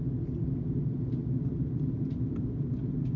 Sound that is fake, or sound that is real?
real